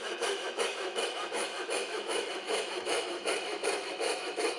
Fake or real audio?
fake